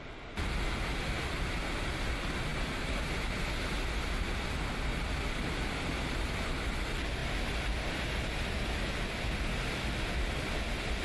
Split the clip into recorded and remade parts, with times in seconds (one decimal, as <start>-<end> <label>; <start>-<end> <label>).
0.0-11.0 recorded